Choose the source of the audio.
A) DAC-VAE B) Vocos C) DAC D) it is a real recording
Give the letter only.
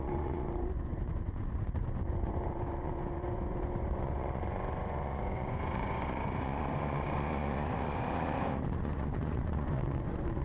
B